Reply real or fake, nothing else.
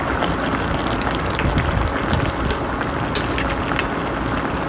real